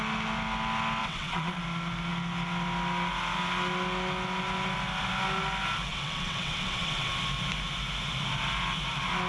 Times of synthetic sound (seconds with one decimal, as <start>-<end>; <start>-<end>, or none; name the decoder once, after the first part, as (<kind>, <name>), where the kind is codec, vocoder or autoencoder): 1.0-1.6 (vocoder, WaveNeXt); 5.9-7.1